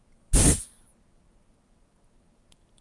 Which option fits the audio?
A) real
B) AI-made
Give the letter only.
A